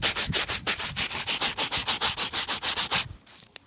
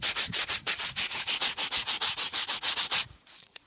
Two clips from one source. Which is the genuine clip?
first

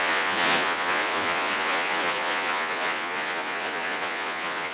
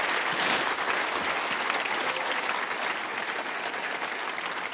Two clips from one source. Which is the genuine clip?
second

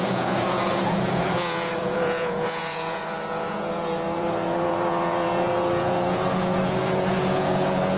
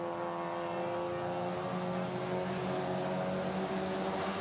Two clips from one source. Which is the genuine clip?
second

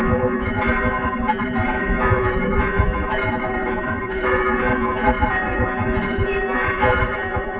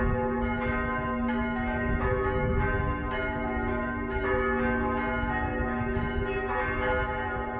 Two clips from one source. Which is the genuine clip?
second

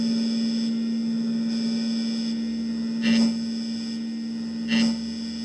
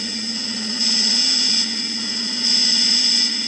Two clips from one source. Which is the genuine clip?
first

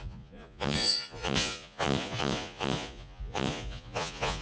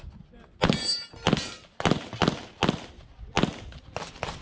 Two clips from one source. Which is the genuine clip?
second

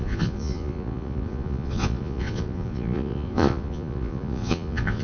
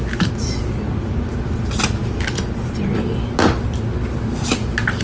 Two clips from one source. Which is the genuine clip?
second